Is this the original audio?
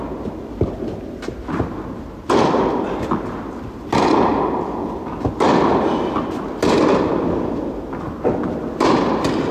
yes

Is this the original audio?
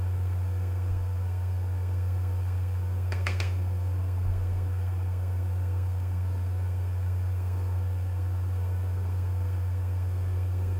no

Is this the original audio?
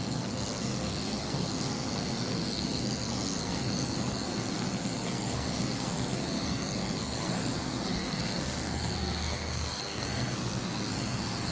no